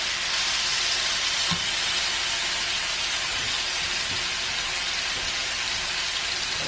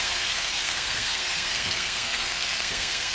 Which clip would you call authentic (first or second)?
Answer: first